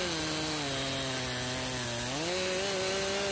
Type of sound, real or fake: real